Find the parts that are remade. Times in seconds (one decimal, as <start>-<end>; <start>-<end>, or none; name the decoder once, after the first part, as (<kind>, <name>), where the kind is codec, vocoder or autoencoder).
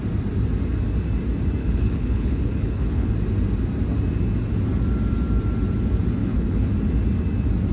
1.6-3.1 (codec, HILCodec); 6.2-6.7